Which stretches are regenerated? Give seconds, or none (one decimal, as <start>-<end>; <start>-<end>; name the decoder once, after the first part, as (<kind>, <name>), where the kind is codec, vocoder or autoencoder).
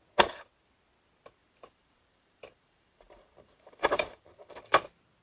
1.4-4.5 (vocoder, BigVGAN v2)